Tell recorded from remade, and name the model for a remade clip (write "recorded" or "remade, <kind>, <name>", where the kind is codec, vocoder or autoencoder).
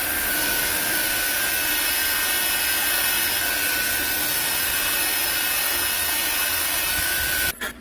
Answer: recorded